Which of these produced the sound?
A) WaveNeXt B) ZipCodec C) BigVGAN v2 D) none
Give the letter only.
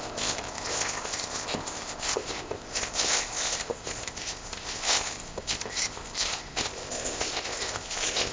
B